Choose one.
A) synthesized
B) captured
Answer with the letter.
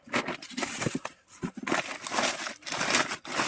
B